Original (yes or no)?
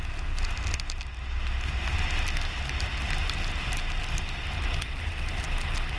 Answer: yes